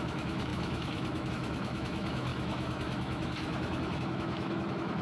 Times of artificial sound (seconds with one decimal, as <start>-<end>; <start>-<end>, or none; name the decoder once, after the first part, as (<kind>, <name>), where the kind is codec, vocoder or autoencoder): 0.0-5.0 (autoencoder, DAC-VAE)